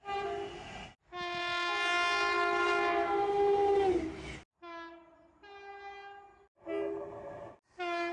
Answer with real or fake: real